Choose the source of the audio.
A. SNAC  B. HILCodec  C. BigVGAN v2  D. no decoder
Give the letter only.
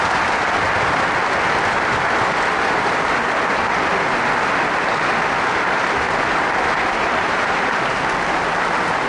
D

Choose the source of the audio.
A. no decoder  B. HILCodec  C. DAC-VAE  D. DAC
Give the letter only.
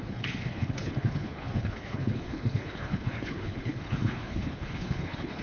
B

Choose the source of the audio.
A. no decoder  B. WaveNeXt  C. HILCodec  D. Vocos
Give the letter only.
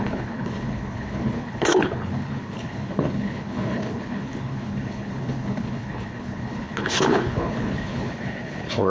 C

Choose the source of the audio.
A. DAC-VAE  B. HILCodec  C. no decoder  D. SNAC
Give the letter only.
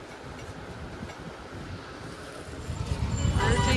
C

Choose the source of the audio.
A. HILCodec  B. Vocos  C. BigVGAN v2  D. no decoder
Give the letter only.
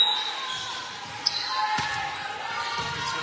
D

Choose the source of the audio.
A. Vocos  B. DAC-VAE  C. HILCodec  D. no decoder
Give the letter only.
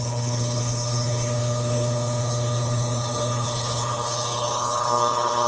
C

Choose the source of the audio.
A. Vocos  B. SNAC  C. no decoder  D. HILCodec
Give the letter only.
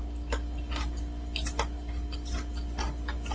C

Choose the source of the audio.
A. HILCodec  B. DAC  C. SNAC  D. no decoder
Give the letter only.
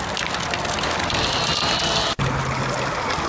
D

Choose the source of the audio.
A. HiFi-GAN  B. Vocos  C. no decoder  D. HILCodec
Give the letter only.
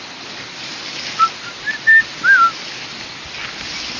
C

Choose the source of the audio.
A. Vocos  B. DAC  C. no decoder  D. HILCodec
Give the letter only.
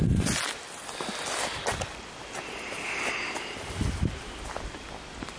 C